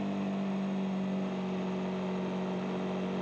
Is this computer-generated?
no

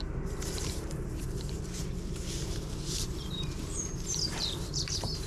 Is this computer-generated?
yes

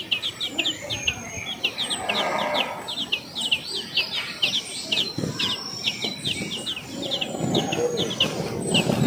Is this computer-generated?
no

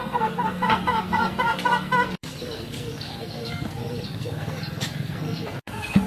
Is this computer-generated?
yes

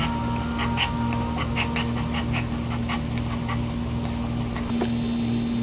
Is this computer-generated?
no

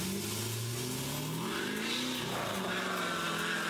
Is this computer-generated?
no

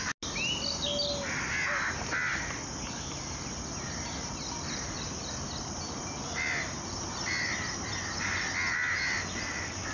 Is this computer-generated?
no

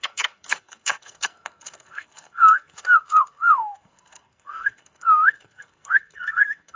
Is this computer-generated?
yes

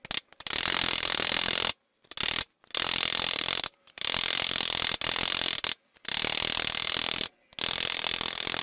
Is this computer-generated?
no